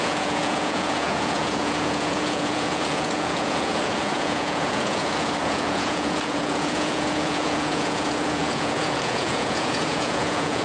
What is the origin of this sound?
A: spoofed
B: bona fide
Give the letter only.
A